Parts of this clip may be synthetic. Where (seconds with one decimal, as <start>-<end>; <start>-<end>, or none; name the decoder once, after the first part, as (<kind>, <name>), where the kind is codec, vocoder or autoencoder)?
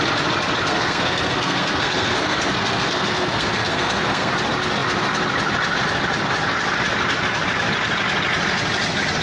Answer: 0.7-4.3 (codec, SNAC)